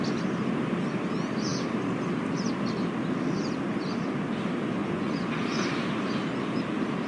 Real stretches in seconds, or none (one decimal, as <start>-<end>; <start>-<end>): 0.0-4.8; 5.3-7.1